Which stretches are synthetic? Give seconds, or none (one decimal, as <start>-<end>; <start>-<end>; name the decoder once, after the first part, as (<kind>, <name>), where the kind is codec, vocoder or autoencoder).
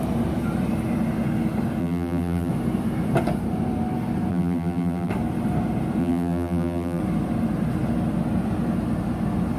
1.8-2.5 (vocoder, BigVGAN v2); 4.3-5.1; 6.0-7.0